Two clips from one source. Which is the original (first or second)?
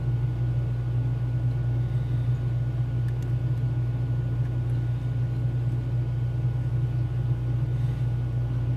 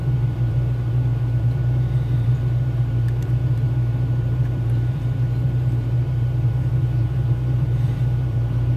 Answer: first